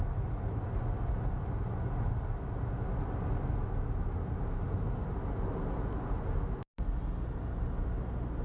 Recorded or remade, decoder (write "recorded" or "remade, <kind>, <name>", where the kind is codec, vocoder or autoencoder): recorded